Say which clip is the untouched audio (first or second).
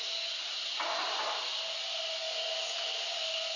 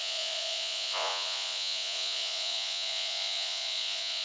first